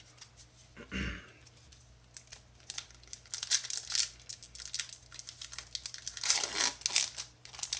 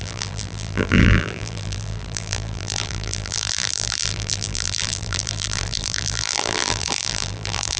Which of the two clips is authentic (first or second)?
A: first